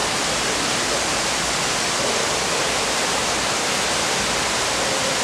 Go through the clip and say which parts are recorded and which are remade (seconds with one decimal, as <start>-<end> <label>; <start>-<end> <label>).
0.0-1.3 recorded; 1.3-5.2 remade